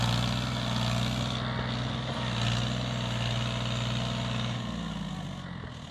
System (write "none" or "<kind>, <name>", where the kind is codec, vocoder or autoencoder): none